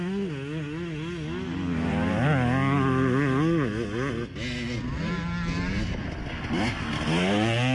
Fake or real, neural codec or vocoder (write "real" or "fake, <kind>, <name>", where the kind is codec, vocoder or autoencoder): real